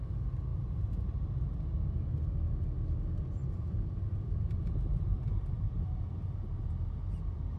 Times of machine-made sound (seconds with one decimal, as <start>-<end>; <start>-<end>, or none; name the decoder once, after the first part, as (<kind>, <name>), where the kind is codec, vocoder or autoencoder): 3.4-5.8 (vocoder, BigVGAN v2)